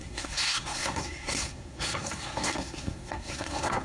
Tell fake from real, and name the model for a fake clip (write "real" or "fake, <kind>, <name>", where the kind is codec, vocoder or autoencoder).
fake, codec, SNAC